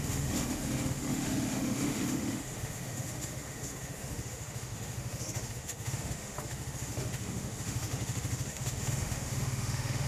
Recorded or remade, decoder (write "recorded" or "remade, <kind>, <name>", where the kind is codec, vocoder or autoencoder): remade, autoencoder, DAC-VAE